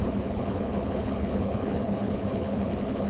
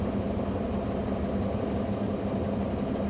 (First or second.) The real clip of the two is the second